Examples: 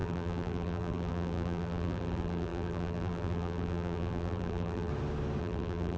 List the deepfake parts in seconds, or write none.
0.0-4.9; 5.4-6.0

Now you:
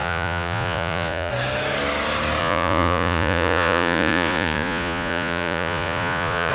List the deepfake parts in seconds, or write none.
0.0-1.3; 2.4-6.5

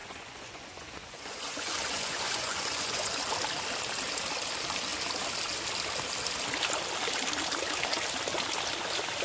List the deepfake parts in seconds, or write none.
0.0-3.3

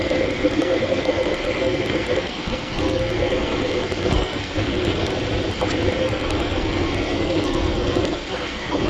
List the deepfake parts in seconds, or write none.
0.0-5.1; 6.0-8.9

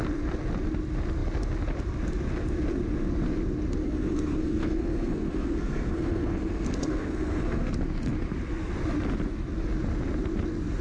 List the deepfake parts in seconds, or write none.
3.8-7.7